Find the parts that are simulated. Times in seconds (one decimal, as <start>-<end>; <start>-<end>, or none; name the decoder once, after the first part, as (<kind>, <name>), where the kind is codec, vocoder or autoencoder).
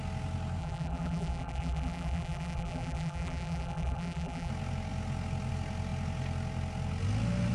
0.6-4.5 (vocoder, BigVGAN v2)